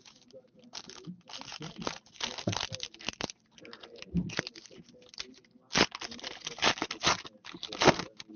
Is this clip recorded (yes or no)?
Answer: yes